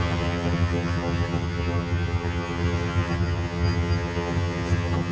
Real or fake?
fake